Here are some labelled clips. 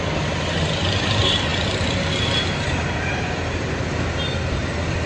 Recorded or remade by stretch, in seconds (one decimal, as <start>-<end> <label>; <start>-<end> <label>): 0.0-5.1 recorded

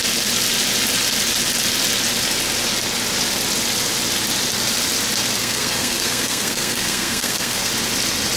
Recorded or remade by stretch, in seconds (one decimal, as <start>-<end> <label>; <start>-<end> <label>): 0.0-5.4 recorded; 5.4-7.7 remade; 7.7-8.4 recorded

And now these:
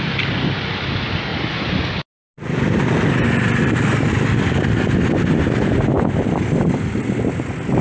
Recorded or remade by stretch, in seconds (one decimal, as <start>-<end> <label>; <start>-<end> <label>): 0.0-7.8 recorded